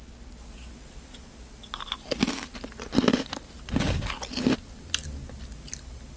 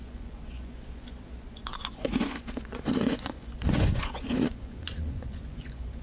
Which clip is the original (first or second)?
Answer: first